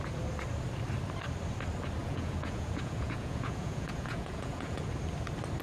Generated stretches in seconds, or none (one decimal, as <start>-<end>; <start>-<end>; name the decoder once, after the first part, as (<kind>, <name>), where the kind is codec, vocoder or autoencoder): 2.0-4.9 (vocoder, Vocos)